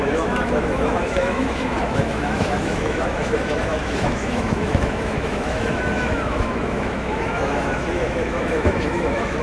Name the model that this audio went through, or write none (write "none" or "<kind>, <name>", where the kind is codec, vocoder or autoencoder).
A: autoencoder, DAC-VAE